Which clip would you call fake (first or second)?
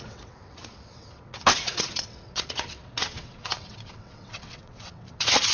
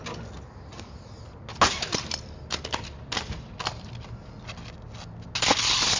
first